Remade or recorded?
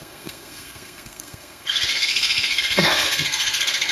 remade